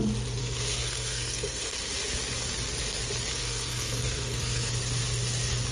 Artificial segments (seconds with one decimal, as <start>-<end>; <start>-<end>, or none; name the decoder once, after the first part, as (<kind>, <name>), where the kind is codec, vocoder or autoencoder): 0.4-1.8 (codec, SNAC); 3.3-4.7